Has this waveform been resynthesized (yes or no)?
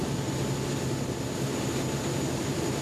no